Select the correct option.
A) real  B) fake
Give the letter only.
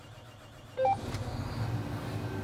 A